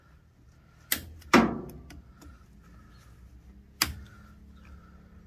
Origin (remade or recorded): recorded